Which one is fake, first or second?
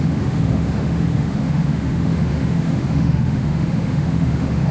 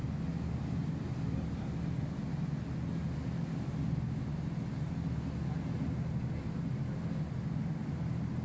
first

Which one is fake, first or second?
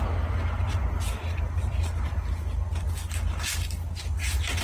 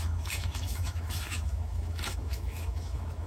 second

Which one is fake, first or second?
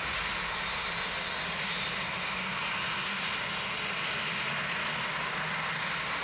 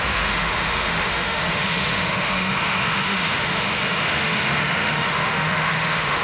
second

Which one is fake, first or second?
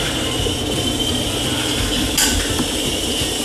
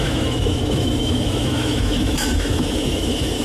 second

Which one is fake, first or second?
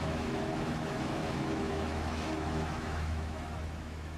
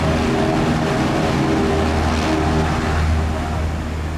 first